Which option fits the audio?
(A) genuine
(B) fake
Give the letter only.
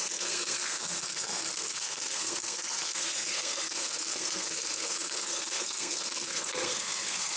B